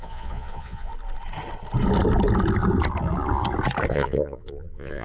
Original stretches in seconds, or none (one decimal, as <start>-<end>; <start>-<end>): 0.9-3.9